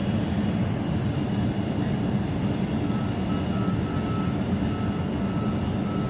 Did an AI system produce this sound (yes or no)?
no